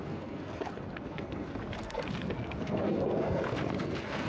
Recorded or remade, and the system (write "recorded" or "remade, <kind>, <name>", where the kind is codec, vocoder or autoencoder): remade, codec, SNAC